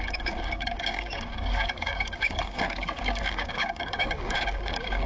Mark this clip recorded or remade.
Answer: remade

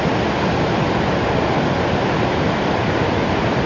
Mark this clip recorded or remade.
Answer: recorded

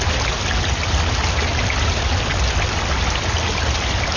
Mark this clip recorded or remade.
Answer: recorded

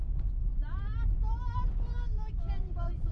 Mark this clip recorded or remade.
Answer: recorded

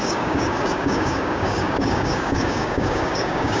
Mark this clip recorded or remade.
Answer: remade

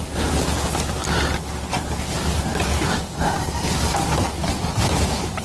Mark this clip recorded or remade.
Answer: recorded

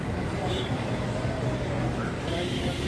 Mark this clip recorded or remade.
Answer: remade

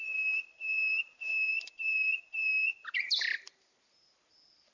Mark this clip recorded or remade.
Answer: recorded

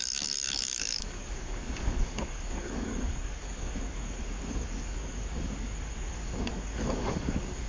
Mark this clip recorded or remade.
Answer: remade